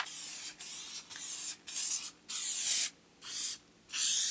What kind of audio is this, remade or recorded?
recorded